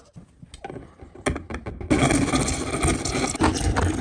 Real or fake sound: real